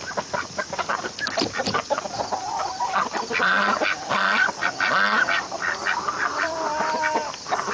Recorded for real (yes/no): yes